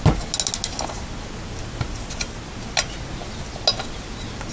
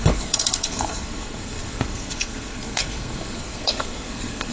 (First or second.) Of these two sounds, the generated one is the second